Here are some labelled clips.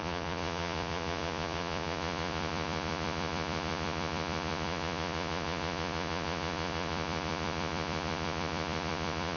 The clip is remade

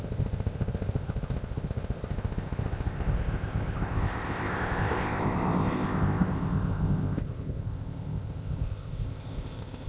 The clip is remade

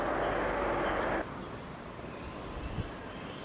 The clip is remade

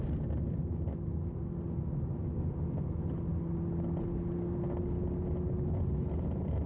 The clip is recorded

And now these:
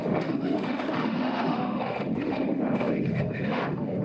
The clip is remade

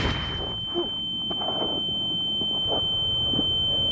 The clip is recorded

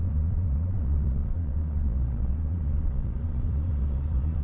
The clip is remade